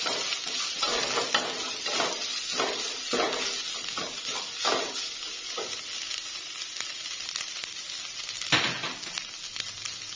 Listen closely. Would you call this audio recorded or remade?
recorded